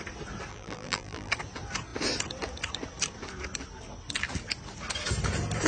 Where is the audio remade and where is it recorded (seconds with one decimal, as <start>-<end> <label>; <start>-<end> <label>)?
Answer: 0.0-0.5 recorded; 0.5-1.3 remade; 1.3-5.7 recorded